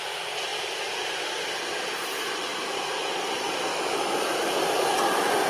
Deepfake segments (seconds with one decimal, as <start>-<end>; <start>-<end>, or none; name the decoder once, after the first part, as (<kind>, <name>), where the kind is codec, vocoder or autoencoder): 3.7-4.2 (autoencoder, DAC-VAE)

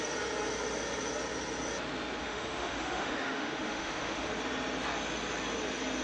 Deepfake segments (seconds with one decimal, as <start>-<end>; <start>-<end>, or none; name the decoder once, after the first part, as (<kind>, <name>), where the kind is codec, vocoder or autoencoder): 2.2-4.3 (autoencoder, DAC-VAE)

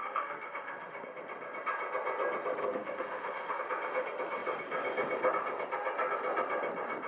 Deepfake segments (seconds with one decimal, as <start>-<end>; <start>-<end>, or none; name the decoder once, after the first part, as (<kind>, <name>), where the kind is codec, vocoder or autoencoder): 0.0-1.0 (autoencoder, DAC-VAE); 2.6-3.6

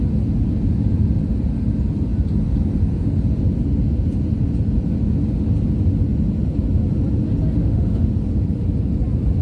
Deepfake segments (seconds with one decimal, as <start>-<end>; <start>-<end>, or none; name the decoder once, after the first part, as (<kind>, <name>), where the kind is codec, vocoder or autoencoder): 7.6-8.1 (autoencoder, DAC-VAE)

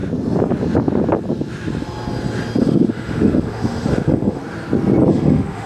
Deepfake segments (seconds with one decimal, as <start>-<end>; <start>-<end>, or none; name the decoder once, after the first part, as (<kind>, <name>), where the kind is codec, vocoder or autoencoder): 2.6-4.4 (autoencoder, DAC-VAE); 5.1-5.7

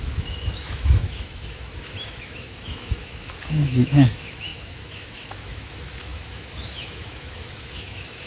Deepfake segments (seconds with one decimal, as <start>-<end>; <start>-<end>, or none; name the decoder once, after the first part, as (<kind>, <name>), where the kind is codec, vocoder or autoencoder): 0.0-8.3 (autoencoder, DAC-VAE)

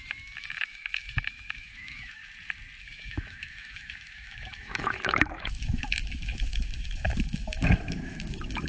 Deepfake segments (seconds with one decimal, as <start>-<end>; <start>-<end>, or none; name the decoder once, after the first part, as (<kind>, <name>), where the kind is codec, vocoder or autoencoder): 0.0-2.2 (autoencoder, DAC-VAE); 2.8-8.7